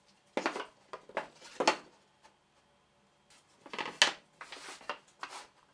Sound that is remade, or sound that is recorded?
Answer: recorded